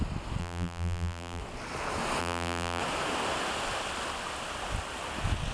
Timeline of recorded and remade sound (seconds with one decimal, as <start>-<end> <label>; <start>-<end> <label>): 0.0-0.4 recorded; 0.4-1.4 remade; 1.4-2.2 recorded; 2.2-2.8 remade; 2.8-5.5 recorded

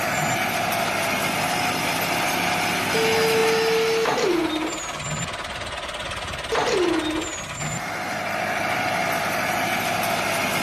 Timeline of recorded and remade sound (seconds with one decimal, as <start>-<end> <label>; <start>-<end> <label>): 0.0-10.6 recorded

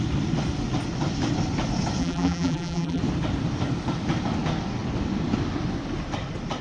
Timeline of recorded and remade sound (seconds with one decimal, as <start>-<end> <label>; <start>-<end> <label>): 0.0-2.0 recorded; 2.0-3.0 remade; 3.0-6.6 recorded

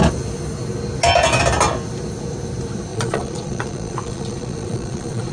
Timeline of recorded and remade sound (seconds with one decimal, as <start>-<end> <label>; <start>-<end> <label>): 0.0-2.9 recorded; 2.9-5.3 remade

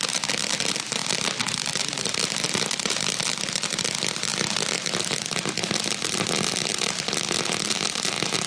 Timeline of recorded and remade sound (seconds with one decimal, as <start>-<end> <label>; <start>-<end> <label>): 0.0-8.5 recorded

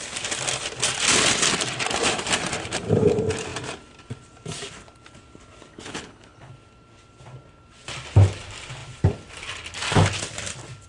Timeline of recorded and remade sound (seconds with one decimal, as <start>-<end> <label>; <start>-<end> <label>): 0.0-5.7 recorded; 5.7-6.5 remade; 6.5-10.9 recorded

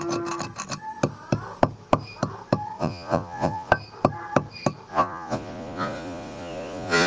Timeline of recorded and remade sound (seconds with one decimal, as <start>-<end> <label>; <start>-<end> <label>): 0.0-2.8 recorded; 2.8-3.7 remade; 3.7-4.9 recorded; 4.9-7.1 remade

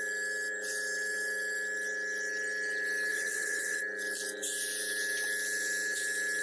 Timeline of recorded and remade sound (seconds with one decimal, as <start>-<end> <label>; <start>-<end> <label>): 0.0-3.1 recorded; 3.1-3.8 remade; 3.8-6.4 recorded